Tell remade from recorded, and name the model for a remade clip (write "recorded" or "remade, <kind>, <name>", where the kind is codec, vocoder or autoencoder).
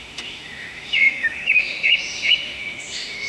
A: remade, autoencoder, DAC-VAE